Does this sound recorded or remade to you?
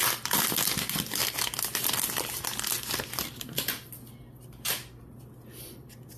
recorded